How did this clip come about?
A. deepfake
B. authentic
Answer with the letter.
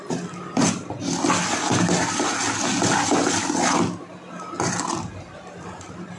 B